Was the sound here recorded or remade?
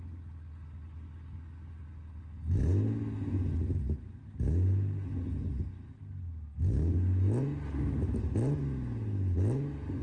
recorded